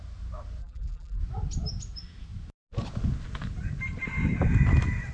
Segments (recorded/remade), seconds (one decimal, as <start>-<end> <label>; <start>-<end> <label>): 0.0-0.6 recorded; 0.6-1.2 remade; 1.2-5.1 recorded